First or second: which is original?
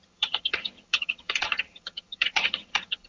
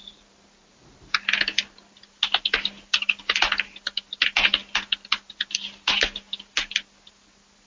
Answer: second